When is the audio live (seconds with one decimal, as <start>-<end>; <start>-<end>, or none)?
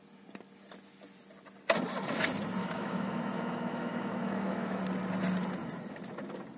0.0-2.6; 4.8-6.6